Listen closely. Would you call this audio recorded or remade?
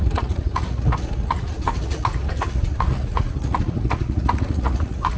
remade